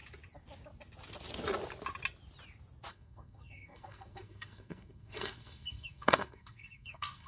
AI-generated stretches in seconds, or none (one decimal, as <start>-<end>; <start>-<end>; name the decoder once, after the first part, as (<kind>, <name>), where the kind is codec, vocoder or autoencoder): 2.9-7.3 (codec, SNAC)